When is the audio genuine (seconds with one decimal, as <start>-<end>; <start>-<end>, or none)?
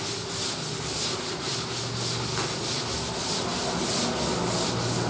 0.0-5.1